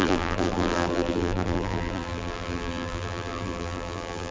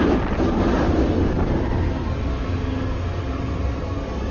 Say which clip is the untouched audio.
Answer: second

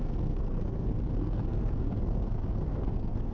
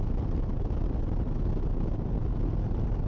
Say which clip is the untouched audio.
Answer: second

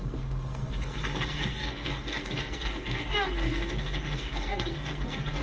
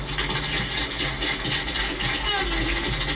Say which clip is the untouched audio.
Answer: second